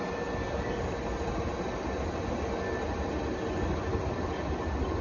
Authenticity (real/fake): real